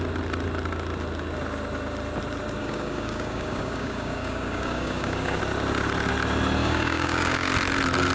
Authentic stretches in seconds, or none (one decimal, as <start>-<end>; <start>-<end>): 0.0-2.6; 5.4-6.6; 7.5-8.1